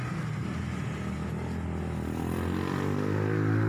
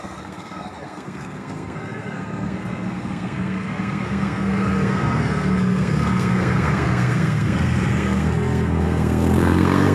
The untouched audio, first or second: first